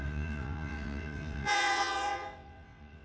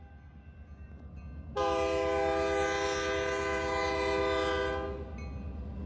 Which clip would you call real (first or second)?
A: second